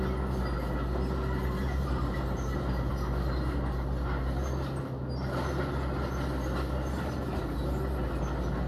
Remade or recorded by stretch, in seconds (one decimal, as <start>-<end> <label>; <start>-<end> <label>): 0.0-1.6 recorded; 1.6-2.9 remade; 2.9-8.7 recorded